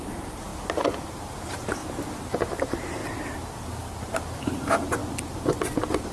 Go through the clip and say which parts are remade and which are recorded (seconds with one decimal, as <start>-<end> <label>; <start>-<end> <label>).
0.0-0.5 remade; 0.5-1.0 recorded; 1.0-1.8 remade; 1.8-2.6 recorded; 2.6-3.0 remade; 3.0-4.5 recorded; 4.5-5.0 remade; 5.0-6.1 recorded